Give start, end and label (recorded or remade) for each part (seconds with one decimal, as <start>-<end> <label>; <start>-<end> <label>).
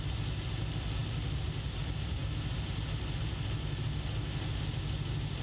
0.0-5.4 recorded